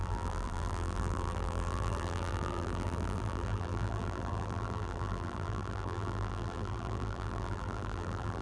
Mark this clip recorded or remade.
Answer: remade